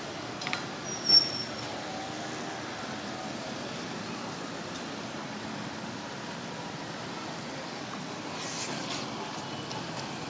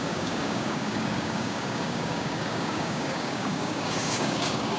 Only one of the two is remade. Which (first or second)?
second